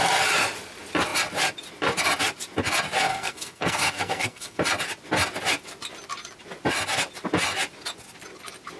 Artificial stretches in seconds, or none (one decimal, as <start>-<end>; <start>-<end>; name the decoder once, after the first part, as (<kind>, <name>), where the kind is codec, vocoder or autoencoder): 3.1-4.6 (codec, SNAC)